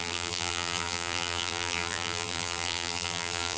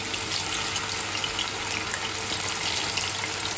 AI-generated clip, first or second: first